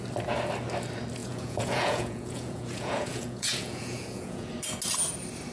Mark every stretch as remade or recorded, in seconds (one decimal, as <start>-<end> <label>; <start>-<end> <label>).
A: 0.0-1.2 recorded; 1.2-4.5 remade; 4.5-5.5 recorded